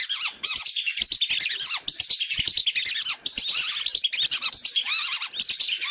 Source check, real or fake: real